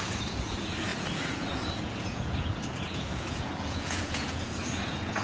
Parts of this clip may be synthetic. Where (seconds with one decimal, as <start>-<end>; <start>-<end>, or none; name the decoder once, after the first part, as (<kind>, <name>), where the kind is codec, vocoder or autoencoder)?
0.0-5.2 (vocoder, Vocos)